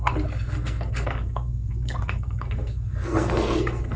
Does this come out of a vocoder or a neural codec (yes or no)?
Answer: yes